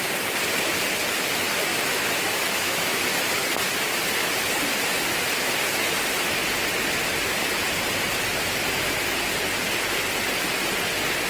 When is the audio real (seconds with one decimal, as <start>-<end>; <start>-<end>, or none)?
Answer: 0.0-1.7; 3.0-11.3